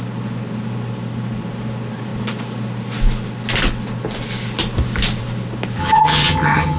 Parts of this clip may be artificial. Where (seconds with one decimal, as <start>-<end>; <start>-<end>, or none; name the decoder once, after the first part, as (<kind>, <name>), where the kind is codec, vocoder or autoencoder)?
5.8-6.8 (vocoder, HiFi-GAN)